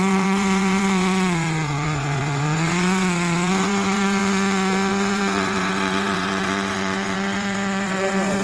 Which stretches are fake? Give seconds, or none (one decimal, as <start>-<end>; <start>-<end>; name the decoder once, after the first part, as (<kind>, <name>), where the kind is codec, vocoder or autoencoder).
0.0-4.2 (vocoder, WaveNeXt); 4.9-8.4